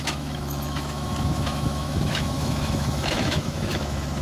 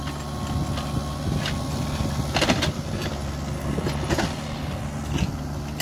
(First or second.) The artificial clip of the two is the first